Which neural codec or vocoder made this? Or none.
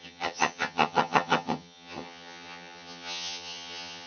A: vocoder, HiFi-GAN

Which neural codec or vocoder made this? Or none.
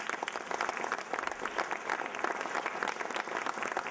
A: none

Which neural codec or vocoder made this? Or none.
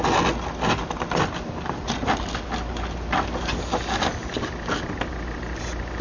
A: none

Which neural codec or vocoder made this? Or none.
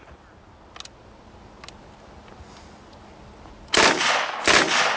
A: none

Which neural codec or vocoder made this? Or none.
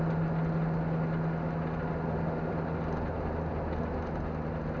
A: none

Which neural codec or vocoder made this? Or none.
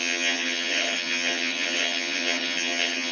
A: vocoder, HiFi-GAN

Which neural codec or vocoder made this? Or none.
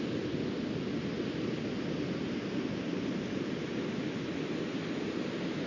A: none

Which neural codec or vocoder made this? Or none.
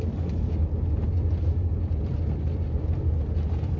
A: none